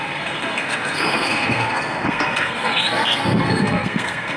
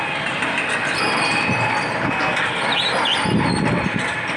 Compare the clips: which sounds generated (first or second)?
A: first